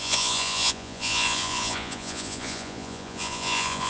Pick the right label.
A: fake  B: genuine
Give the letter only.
A